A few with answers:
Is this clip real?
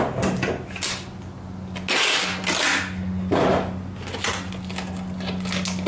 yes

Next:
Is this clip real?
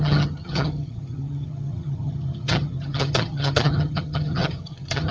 no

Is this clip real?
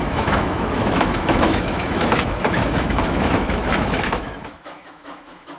no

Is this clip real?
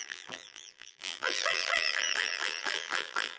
no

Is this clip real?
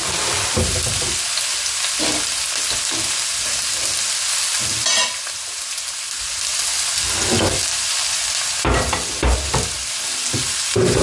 yes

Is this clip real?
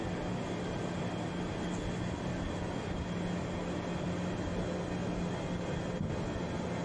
yes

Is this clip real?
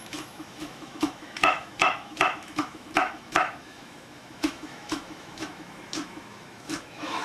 no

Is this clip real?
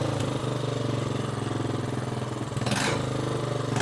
yes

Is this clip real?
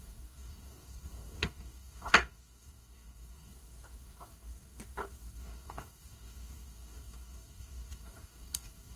no